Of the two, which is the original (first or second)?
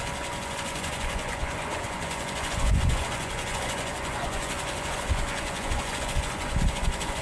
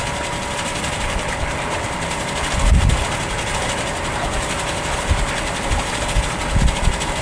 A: second